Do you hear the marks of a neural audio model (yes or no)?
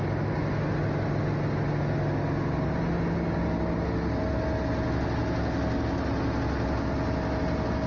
no